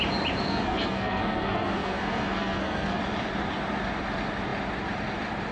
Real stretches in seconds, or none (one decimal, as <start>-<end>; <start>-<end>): 0.0-0.5; 3.0-5.5